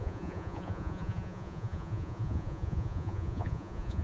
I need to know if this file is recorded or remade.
remade